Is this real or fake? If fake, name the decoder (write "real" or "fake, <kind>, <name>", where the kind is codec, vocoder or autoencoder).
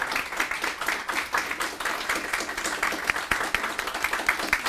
real